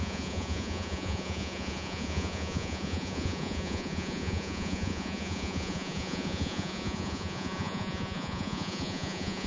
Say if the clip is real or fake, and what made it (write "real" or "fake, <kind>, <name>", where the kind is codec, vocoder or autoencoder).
fake, vocoder, Vocos